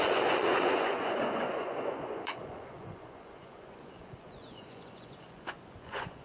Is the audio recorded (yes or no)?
no